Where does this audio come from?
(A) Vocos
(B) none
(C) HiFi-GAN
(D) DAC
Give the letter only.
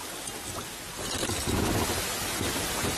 B